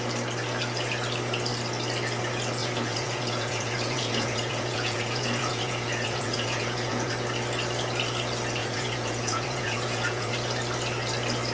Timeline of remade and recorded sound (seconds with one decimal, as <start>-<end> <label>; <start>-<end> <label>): 0.0-2.6 recorded; 2.6-7.1 remade; 7.1-8.6 recorded; 8.6-10.3 remade; 10.3-11.5 recorded